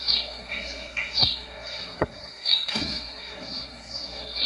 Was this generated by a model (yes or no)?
yes